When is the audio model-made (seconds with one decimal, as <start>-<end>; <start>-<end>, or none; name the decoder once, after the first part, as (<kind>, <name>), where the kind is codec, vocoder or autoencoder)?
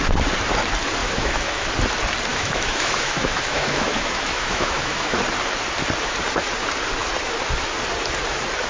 1.0-1.7 (autoencoder, DAC-VAE); 2.3-5.2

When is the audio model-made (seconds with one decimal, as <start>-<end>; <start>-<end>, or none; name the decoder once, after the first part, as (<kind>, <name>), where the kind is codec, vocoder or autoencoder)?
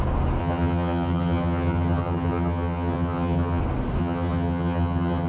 0.4-3.6 (vocoder, HiFi-GAN); 4.0-5.3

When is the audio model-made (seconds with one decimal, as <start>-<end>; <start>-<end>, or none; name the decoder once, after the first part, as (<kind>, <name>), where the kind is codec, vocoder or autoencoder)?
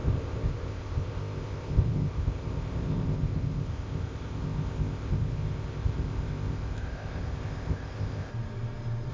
0.0-8.3 (codec, ZipCodec)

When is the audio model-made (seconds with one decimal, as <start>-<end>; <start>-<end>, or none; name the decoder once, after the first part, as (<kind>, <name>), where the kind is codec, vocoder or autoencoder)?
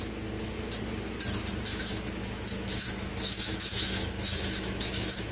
1.7-5.3 (autoencoder, DAC-VAE)